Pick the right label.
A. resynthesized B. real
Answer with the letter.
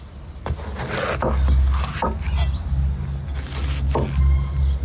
B